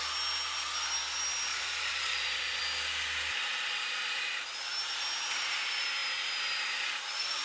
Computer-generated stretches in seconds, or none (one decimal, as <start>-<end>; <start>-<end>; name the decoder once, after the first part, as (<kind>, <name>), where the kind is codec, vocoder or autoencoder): 1.5-2.6 (vocoder, BigVGAN v2)